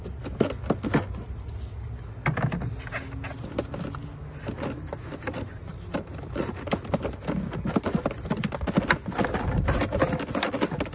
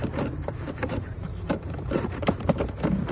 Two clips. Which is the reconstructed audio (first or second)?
second